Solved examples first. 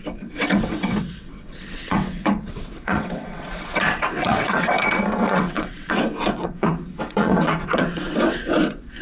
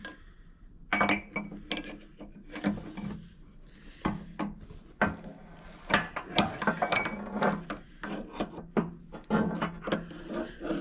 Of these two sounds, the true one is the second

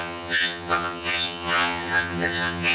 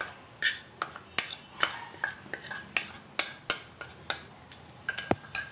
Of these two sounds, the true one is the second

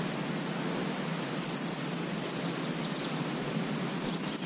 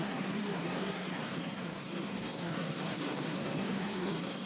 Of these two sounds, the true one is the first